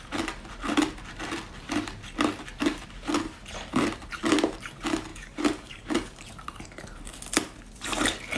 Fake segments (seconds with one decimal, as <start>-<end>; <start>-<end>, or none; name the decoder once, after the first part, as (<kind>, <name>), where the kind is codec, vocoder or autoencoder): 5.1-6.2 (codec, DAC)